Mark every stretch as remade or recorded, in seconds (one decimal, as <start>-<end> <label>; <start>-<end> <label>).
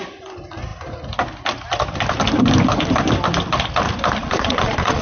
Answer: 0.0-4.2 recorded; 4.2-5.0 remade